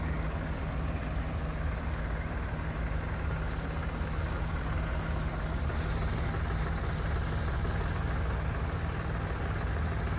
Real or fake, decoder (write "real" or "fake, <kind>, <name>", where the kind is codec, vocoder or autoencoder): real